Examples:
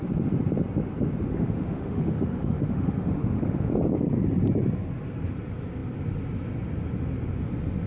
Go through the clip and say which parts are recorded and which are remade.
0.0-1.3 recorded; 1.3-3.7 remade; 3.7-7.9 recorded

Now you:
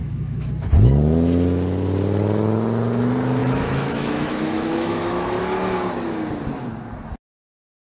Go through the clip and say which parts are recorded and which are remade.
0.0-0.5 remade; 0.5-3.4 recorded; 3.4-5.4 remade; 5.4-7.8 recorded